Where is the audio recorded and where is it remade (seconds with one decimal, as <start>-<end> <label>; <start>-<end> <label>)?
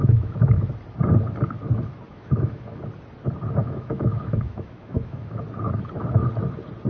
0.0-0.7 remade; 0.7-2.1 recorded; 2.1-2.8 remade; 2.8-3.6 recorded; 3.6-5.4 remade; 5.4-6.9 recorded